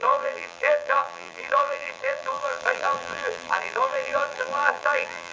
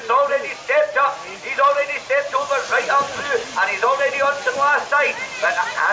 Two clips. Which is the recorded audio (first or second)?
second